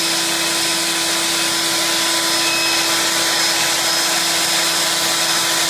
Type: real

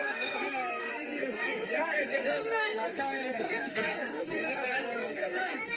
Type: fake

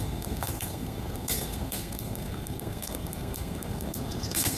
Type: fake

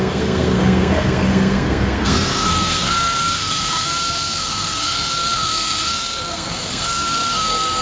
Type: fake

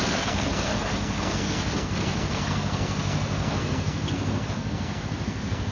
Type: fake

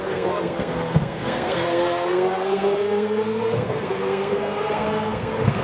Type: fake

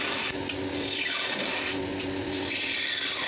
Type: real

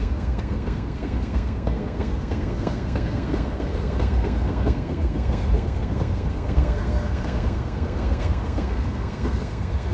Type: fake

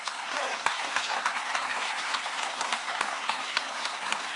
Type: fake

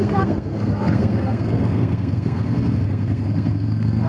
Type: fake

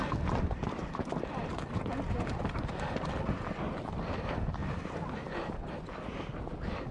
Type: real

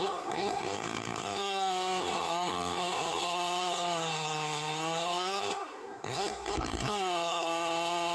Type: fake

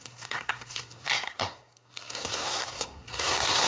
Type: fake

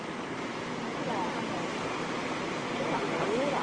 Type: real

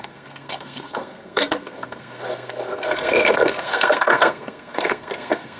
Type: fake